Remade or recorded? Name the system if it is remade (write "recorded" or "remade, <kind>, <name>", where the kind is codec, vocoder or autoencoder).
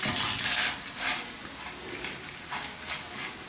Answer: recorded